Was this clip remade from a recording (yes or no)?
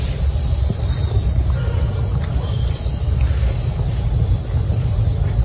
no